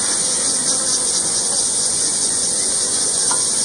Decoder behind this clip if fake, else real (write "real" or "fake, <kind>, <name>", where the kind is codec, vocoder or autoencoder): fake, vocoder, Vocos